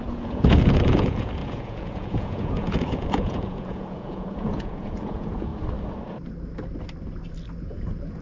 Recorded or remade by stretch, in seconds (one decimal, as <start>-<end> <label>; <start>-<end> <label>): 0.0-5.5 remade; 5.5-7.6 recorded; 7.6-8.2 remade